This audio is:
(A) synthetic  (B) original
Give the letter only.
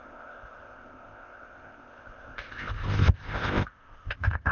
A